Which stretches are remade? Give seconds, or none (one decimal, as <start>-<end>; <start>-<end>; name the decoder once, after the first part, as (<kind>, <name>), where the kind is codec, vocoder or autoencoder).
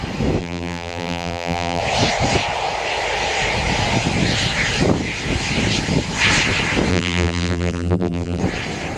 0.4-1.8 (vocoder, BigVGAN v2); 6.9-8.4